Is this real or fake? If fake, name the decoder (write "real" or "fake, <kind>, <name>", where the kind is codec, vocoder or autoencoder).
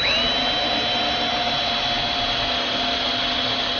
real